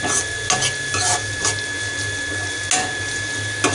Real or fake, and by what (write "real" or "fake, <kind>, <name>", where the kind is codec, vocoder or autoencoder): real